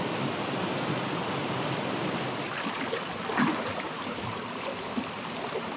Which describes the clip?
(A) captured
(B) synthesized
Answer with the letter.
A